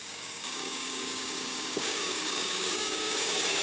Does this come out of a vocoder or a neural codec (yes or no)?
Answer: yes